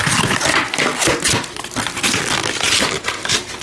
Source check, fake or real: real